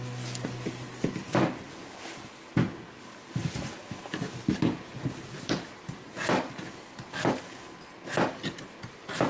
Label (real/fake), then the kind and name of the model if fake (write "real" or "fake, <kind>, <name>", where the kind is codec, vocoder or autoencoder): real